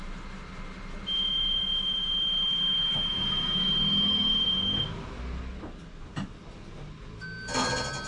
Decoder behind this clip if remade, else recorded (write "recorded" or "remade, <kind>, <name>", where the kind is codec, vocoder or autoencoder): recorded